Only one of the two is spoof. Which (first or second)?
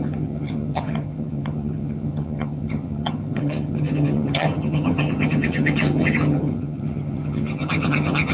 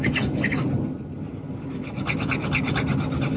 first